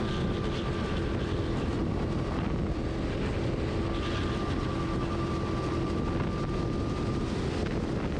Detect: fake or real real